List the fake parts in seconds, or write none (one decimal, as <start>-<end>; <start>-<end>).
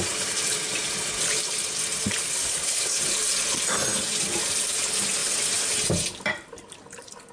2.5-3.0